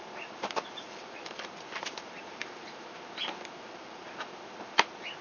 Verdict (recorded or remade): remade